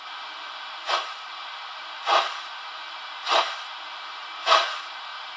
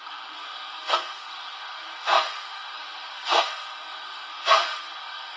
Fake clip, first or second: second